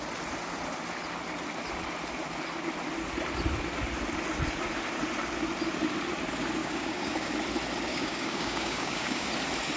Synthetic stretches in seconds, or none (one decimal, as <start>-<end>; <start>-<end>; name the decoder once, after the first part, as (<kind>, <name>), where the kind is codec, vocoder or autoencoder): 6.6-7.3 (codec, DAC); 7.9-9.3